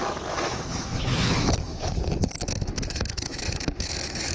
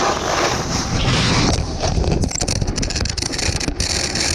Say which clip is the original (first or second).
second